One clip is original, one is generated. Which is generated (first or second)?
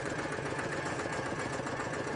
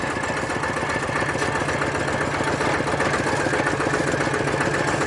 first